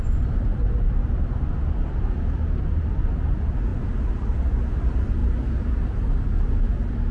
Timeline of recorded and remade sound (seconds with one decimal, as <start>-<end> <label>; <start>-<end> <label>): 0.0-7.1 recorded